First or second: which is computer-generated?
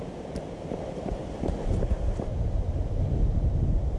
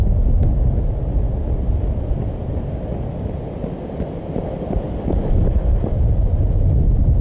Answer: first